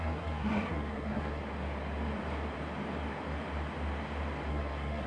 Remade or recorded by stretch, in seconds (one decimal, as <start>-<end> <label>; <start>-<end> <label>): 0.0-1.4 remade; 1.4-4.5 recorded; 4.5-5.1 remade